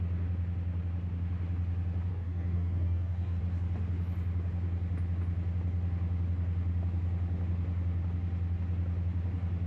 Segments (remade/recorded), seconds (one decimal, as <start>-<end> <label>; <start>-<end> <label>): 0.0-2.1 recorded; 2.1-3.4 remade; 3.4-9.7 recorded